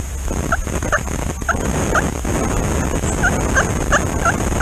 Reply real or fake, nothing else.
real